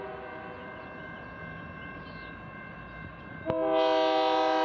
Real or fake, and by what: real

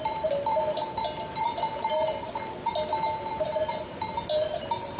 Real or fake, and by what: real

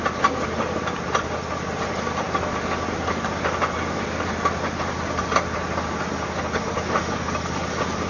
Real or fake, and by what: real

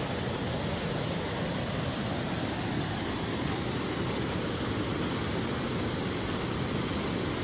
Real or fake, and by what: real